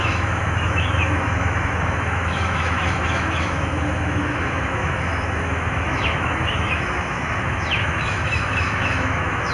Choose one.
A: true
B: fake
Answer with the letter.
B